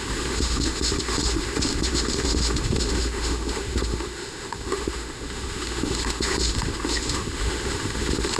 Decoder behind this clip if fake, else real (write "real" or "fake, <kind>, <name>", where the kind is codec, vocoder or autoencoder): fake, autoencoder, DAC-VAE